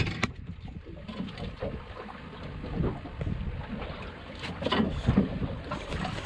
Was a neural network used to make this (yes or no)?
no